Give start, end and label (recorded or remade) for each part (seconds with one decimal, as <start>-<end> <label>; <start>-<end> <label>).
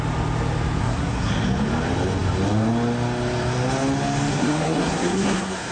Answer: 0.0-0.8 recorded; 0.8-1.3 remade; 1.3-4.3 recorded; 4.3-5.7 remade